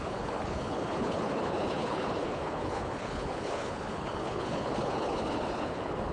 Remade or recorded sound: remade